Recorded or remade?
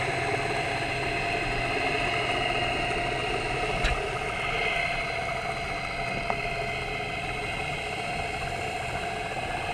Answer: recorded